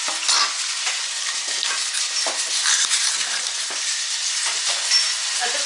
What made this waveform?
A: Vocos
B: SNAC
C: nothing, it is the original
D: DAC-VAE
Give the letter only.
C